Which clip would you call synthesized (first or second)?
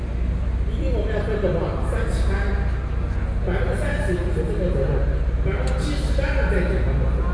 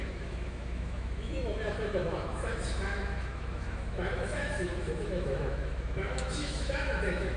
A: second